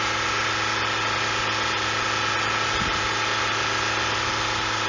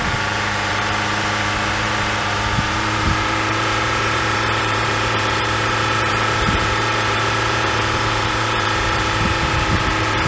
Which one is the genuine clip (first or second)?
first